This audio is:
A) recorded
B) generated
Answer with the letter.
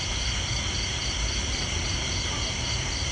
B